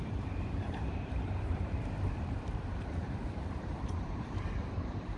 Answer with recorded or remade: remade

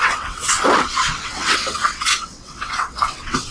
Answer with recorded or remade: remade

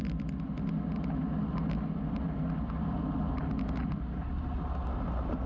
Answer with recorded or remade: recorded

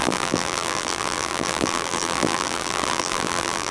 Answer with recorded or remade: remade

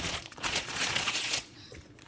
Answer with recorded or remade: remade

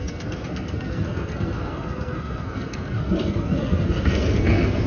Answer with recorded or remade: remade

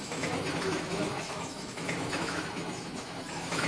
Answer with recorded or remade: remade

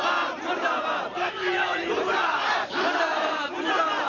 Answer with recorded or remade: remade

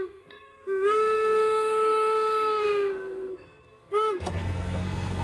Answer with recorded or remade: remade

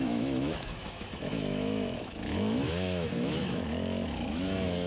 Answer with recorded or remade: remade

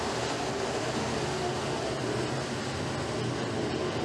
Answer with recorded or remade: recorded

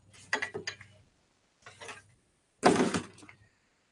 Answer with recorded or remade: recorded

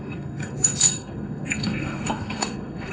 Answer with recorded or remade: remade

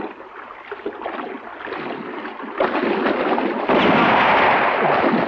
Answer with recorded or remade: recorded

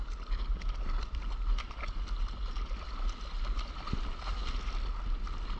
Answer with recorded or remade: recorded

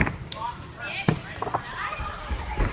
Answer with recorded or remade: remade